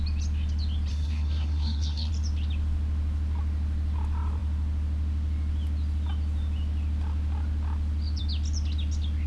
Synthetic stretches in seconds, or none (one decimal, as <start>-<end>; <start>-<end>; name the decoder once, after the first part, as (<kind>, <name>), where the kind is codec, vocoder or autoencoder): 0.9-2.1 (codec, SNAC)